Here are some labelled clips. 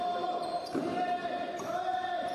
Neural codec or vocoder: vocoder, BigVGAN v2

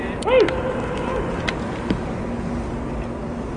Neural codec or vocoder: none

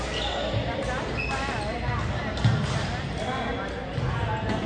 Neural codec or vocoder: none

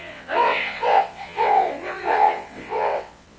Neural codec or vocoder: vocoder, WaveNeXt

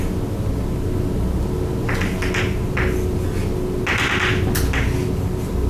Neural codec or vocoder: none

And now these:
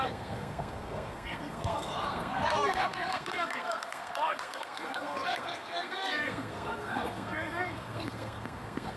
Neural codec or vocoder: codec, SNAC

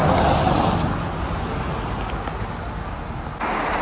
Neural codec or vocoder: none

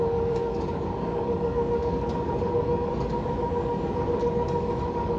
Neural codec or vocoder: codec, DAC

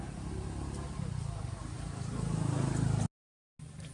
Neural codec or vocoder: none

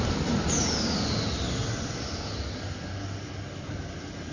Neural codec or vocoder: none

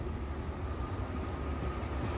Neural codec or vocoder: none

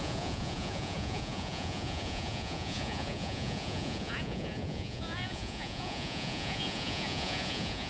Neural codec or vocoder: vocoder, Vocos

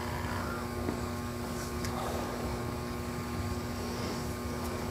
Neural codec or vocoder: codec, DAC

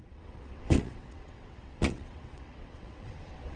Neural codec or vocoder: vocoder, WaveNeXt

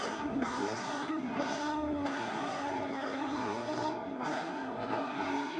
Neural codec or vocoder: codec, SNAC